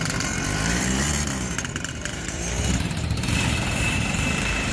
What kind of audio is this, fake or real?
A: fake